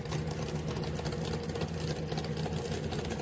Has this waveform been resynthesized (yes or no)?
no